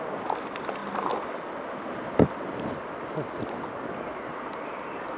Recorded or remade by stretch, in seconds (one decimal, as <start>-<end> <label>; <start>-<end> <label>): 0.0-4.5 recorded; 4.5-5.2 remade